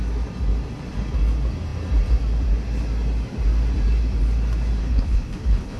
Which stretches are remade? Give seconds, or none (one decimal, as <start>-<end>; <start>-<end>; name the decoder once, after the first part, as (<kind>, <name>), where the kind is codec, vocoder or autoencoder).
4.8-5.8 (codec, HILCodec)